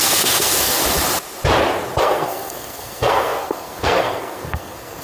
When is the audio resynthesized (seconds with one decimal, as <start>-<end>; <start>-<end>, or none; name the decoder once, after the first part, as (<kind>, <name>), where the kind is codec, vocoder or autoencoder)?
0.0-0.8 (codec, SNAC); 2.0-5.0